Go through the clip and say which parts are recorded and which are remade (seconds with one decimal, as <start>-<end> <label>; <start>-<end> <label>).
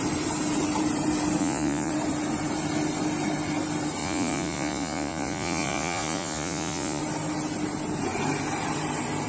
0.0-1.4 recorded; 1.4-1.9 remade; 1.9-4.0 recorded; 4.0-7.0 remade; 7.0-9.3 recorded